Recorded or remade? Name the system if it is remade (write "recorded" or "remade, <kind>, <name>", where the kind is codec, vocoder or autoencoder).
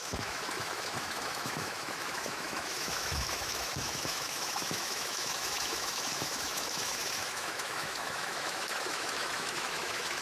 remade, autoencoder, DAC-VAE